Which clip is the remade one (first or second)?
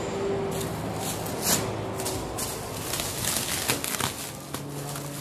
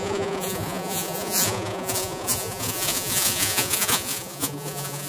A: second